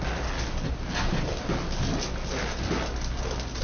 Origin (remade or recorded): recorded